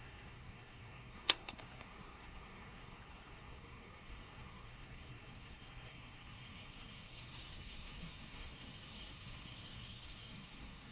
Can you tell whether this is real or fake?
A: fake